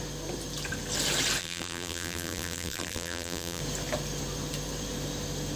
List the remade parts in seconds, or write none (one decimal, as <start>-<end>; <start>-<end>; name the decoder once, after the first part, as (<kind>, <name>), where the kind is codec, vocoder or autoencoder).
1.4-3.6 (vocoder, BigVGAN v2)